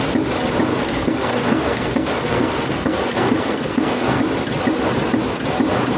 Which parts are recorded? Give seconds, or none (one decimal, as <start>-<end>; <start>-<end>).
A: 0.0-0.7; 4.2-6.0